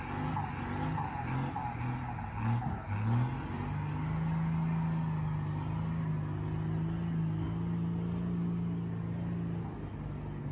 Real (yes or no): yes